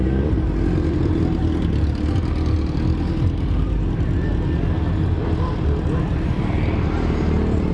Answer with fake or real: real